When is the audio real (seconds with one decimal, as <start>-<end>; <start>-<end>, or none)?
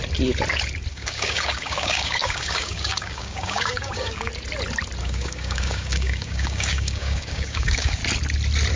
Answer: 0.0-0.9; 4.3-5.0; 8.0-8.8